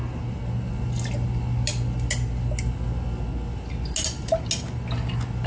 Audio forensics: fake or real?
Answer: real